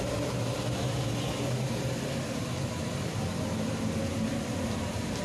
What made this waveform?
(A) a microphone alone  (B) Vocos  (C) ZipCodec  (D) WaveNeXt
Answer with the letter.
A